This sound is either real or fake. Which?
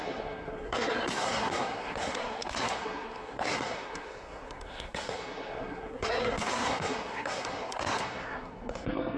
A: fake